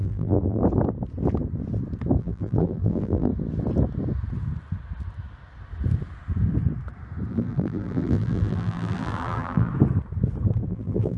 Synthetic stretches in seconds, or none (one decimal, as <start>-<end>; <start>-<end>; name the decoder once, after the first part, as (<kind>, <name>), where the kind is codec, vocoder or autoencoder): 0.0-0.6 (vocoder, BigVGAN v2); 2.2-3.3; 7.3-9.7; 10.7-11.2